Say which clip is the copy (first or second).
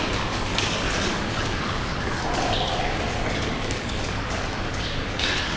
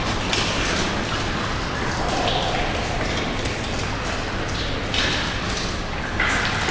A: first